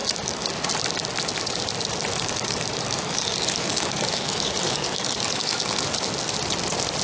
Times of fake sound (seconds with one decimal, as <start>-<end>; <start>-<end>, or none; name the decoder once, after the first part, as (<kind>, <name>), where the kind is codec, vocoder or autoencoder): 0.0-0.5 (codec, DAC); 2.1-5.6